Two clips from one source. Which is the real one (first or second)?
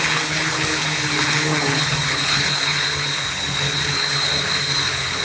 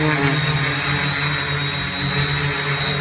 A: second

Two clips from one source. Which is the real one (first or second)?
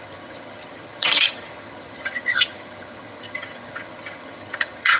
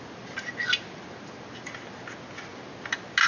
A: second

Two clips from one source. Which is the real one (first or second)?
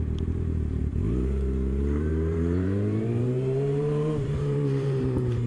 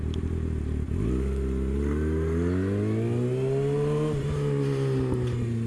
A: second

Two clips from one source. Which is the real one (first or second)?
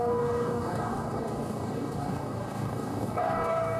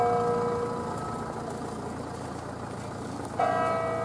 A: second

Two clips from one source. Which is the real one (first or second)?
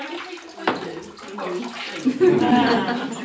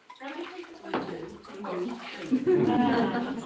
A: first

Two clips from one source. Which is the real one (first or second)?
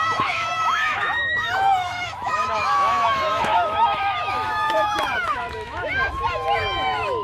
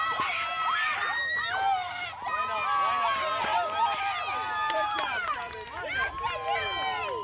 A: second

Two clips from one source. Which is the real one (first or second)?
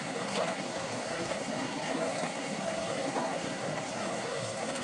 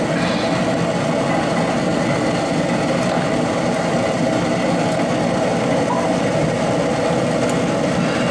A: second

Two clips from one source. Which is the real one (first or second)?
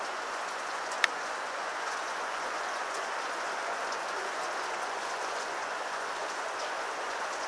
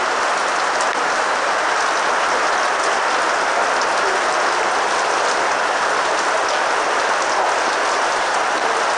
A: second